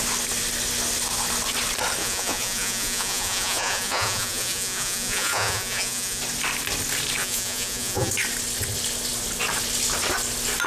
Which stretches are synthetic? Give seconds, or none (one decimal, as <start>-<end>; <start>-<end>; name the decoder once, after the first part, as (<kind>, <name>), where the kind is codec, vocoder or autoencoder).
2.0-6.2 (vocoder, Vocos); 7.2-8.1